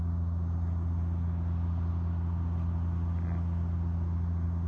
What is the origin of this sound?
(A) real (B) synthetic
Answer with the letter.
A